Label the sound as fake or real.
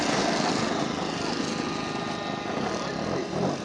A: real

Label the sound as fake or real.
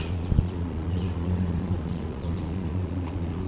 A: fake